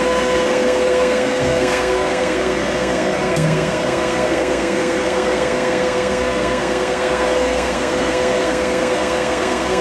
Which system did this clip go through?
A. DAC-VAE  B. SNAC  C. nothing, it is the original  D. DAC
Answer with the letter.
B